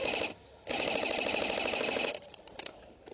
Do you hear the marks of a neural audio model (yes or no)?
no